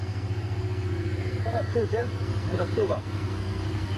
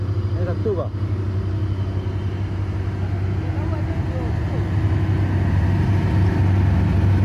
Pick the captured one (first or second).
second